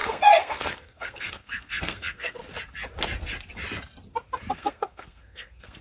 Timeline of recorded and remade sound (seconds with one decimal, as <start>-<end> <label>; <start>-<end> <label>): 0.0-2.4 remade; 2.4-4.5 recorded; 4.5-5.8 remade

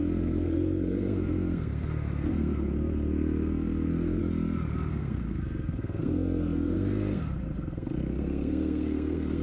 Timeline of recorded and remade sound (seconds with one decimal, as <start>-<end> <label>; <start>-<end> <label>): 0.0-4.2 remade; 4.2-4.9 recorded; 4.9-9.4 remade

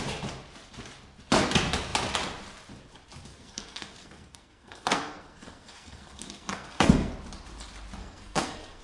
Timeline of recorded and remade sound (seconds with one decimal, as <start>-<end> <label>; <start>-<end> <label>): 0.0-3.3 recorded; 3.3-7.1 remade; 7.1-8.0 recorded; 8.0-8.8 remade

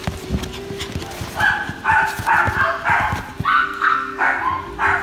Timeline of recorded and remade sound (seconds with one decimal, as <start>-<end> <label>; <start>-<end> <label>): 0.0-3.5 recorded; 3.5-4.4 remade; 4.4-5.0 recorded